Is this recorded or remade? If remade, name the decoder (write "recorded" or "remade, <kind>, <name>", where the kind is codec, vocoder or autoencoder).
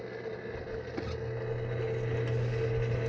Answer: recorded